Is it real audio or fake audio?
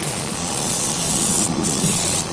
fake